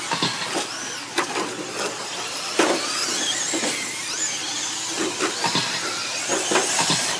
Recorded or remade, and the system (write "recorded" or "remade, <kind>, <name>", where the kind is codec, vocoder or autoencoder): recorded